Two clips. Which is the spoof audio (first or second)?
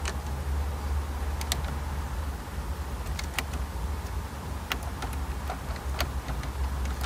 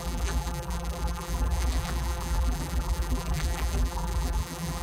second